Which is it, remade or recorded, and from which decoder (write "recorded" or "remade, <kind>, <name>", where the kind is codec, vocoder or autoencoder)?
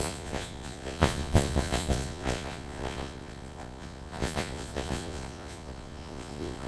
remade, vocoder, Vocos